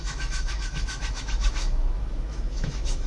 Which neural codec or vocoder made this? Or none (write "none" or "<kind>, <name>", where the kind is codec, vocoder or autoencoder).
autoencoder, DAC-VAE